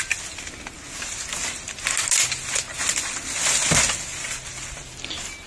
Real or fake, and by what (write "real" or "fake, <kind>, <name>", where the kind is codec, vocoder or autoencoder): real